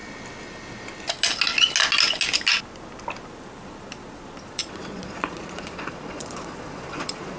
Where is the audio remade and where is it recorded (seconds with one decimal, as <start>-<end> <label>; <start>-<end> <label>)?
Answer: 0.0-4.4 recorded; 4.4-7.4 remade